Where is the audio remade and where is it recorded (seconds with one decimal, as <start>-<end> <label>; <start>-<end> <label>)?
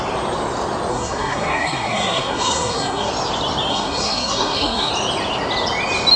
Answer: 0.0-0.9 recorded; 0.9-3.1 remade; 3.1-3.7 recorded; 3.7-4.9 remade; 4.9-6.2 recorded